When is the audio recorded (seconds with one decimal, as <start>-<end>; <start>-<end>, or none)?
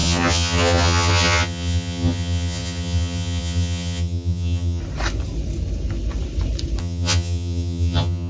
4.8-6.8